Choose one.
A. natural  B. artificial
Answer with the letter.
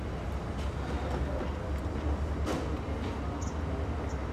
A